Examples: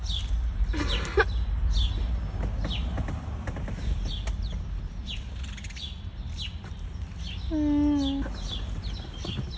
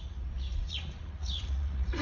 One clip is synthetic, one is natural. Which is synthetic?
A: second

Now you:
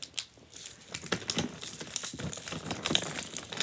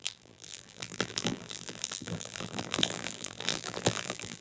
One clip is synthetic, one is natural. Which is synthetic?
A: second